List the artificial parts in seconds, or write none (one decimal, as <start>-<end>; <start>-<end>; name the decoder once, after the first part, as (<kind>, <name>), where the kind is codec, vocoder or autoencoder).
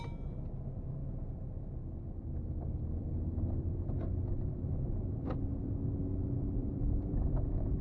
1.0-5.7 (vocoder, BigVGAN v2); 6.6-7.8